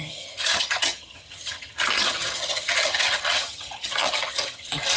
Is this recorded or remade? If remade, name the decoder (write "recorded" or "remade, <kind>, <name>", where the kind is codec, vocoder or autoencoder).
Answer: remade, vocoder, HiFi-GAN